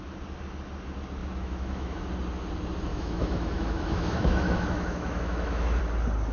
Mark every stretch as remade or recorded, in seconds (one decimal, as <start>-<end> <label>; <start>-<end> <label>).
0.0-1.2 recorded; 1.2-2.0 remade; 2.0-2.9 recorded; 2.9-5.8 remade; 5.8-6.3 recorded